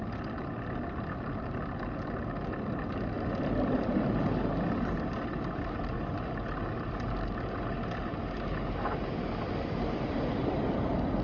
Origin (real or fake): real